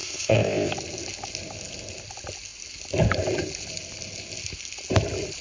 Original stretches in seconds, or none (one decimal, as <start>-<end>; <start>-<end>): 0.7-5.4